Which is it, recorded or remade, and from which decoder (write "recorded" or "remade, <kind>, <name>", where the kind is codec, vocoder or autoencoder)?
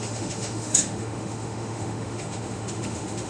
remade, autoencoder, DAC-VAE